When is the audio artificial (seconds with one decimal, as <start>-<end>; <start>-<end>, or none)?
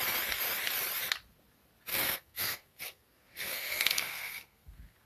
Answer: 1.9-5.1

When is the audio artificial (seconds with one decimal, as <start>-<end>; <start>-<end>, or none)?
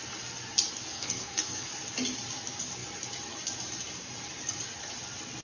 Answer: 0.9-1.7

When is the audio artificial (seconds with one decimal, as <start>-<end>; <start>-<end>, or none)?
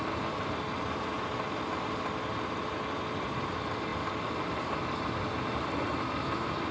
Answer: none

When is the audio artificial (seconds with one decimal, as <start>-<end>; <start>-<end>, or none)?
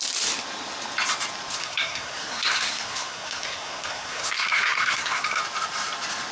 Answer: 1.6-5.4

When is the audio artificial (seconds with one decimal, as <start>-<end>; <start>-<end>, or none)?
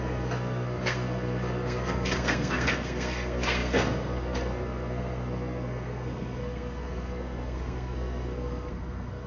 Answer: 0.0-9.3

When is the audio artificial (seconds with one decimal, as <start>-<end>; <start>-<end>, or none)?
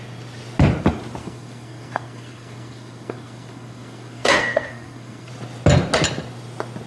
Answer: 1.2-5.3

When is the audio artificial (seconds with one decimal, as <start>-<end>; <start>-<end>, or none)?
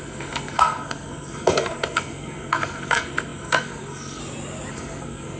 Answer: 0.0-4.2; 4.7-5.4